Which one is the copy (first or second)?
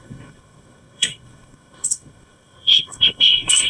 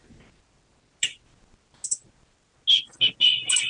first